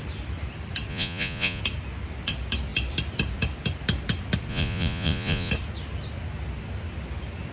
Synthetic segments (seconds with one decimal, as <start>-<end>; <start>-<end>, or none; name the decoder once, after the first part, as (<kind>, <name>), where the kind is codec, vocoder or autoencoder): 0.9-1.6 (vocoder, Vocos); 4.5-5.5